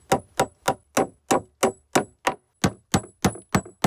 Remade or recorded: recorded